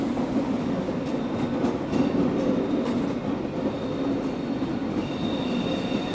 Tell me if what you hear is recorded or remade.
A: recorded